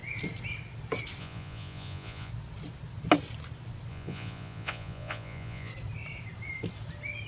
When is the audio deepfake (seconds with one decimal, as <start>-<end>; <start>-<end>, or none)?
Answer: 1.2-2.3; 3.9-5.7